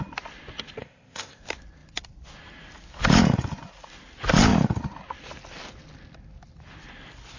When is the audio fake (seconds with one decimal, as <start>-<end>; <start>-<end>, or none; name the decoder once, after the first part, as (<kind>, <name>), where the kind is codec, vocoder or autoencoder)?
0.8-1.4 (codec, ZipCodec)